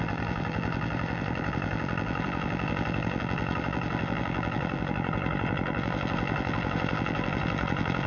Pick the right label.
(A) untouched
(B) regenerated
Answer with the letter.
B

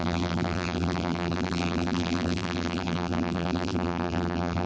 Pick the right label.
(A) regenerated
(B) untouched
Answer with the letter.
A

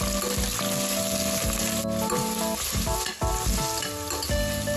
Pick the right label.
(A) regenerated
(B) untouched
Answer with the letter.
B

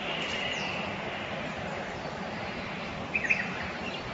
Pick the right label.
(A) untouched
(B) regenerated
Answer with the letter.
B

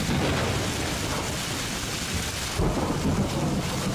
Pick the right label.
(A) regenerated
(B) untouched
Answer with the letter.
B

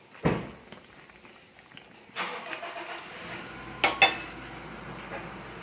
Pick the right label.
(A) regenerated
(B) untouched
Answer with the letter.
B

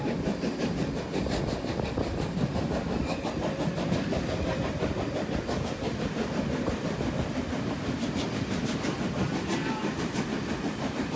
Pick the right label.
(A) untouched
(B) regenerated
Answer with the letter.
A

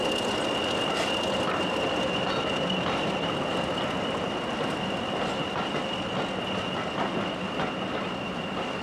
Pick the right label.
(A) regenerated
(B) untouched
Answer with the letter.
B